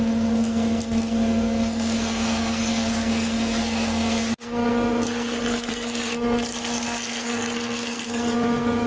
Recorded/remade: remade